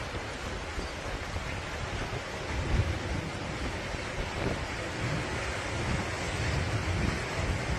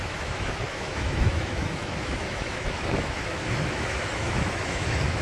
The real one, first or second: first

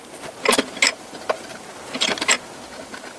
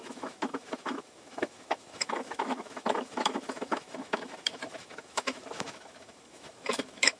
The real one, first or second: first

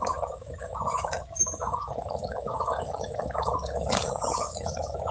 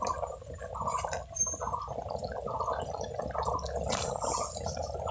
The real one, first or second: second